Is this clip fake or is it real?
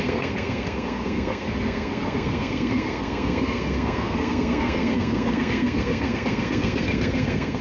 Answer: fake